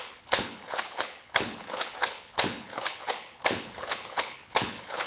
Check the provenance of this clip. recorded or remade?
remade